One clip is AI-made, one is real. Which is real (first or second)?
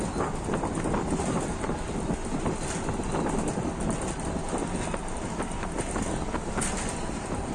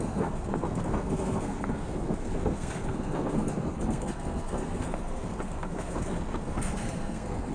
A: first